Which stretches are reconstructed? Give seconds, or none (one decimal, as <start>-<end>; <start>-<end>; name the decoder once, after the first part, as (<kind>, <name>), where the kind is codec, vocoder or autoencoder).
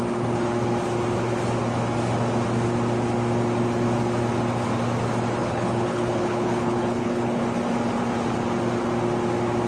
5.4-7.4 (codec, HILCodec)